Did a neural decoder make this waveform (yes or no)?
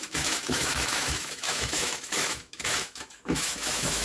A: yes